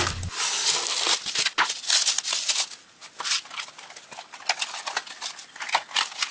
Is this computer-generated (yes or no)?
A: no